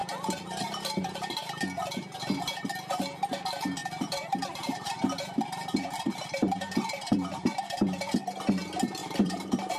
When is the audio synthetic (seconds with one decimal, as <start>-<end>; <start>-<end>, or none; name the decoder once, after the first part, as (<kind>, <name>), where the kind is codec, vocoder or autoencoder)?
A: 0.0-1.4 (vocoder, BigVGAN v2); 3.8-8.0; 9.0-9.8